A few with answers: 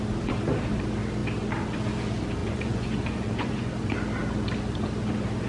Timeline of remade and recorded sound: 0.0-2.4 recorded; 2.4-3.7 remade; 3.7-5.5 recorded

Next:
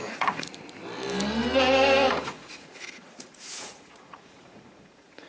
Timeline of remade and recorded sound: 0.0-0.5 remade; 0.5-2.1 recorded; 2.1-5.3 remade

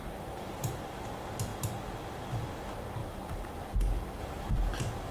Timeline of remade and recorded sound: 0.0-0.8 remade; 0.8-3.0 recorded; 3.0-5.1 remade